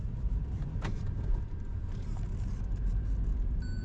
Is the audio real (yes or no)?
no